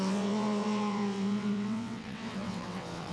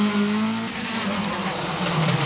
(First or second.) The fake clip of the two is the first